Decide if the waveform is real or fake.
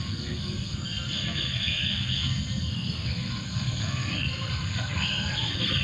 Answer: fake